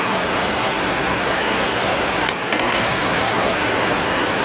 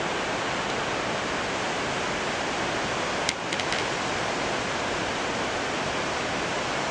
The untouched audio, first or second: second